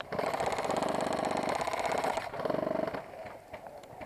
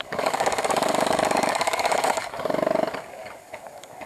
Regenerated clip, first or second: second